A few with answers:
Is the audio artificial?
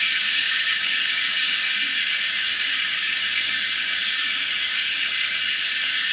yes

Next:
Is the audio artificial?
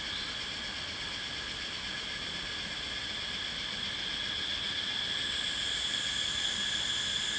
no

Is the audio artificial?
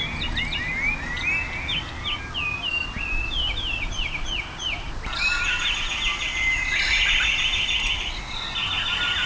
no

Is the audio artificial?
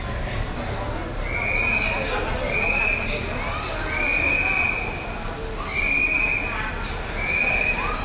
no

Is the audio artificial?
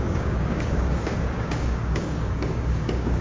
yes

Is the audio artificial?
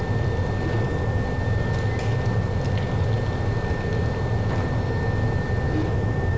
no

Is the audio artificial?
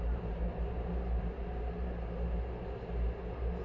no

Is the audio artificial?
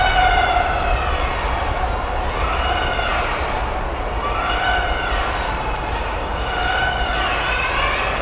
no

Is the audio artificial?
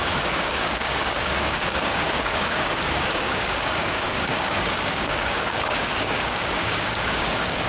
yes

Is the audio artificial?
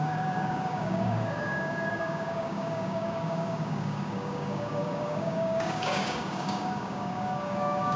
yes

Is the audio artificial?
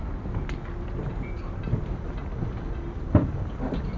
no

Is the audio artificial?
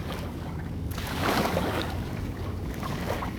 yes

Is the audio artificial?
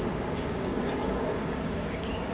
yes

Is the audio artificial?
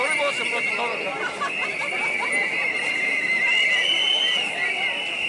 no